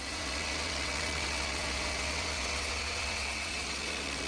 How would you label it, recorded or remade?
remade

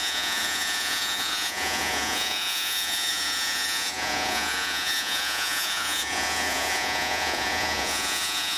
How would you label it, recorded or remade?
remade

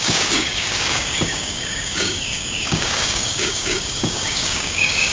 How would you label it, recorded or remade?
remade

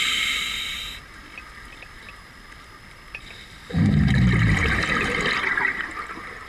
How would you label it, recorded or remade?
recorded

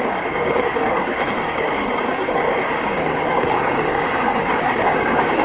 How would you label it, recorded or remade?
remade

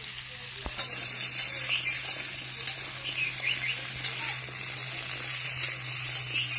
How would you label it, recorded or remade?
recorded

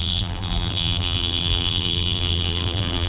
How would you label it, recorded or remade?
remade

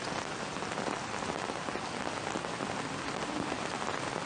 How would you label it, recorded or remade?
recorded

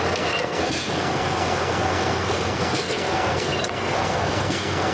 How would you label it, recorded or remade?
remade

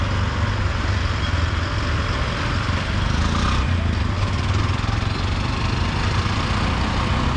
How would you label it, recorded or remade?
recorded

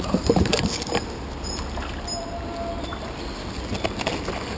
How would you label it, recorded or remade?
recorded